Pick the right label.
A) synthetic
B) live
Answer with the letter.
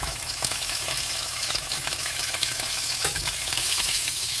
A